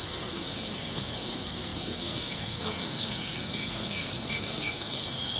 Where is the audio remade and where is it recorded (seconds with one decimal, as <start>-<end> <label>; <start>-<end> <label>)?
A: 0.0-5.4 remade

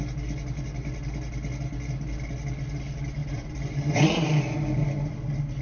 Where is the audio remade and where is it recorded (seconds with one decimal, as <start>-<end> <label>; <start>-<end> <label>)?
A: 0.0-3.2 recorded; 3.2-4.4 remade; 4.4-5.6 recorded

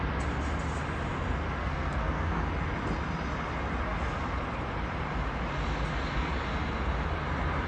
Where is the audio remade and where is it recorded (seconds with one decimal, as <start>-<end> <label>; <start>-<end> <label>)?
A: 0.0-1.6 recorded; 1.6-2.4 remade; 2.4-7.7 recorded